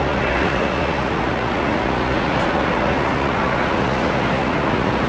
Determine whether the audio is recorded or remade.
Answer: remade